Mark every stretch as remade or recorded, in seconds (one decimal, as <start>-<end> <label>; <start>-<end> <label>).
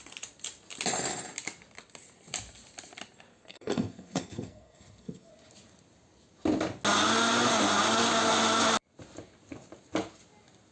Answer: 0.0-3.3 recorded; 3.3-5.3 remade; 5.3-10.7 recorded